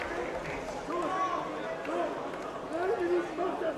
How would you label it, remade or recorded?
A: recorded